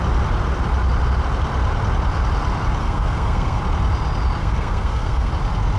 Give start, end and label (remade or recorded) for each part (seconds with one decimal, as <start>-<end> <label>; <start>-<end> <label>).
0.0-2.8 recorded; 2.8-3.6 remade; 3.6-4.4 recorded; 4.4-5.3 remade; 5.3-5.8 recorded